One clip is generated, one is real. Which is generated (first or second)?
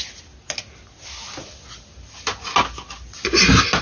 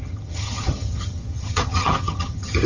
second